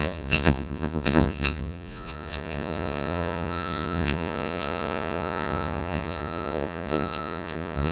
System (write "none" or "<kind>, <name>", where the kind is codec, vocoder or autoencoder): vocoder, Vocos